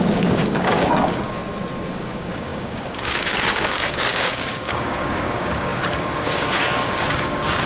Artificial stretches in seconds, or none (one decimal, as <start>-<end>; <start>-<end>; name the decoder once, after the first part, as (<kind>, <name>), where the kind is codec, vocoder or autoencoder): 0.0-1.4 (codec, DAC); 2.0-7.7